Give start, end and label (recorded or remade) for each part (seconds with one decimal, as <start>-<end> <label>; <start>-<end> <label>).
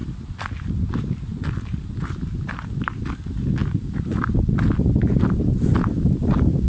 0.0-6.7 recorded